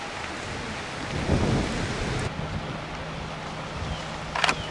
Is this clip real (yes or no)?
yes